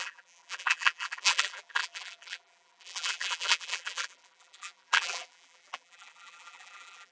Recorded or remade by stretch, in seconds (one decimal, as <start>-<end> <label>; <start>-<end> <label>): 0.0-7.1 remade